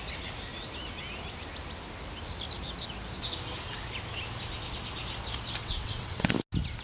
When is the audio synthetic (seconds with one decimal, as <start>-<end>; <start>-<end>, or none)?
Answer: 5.6-6.3